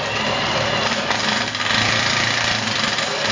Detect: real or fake real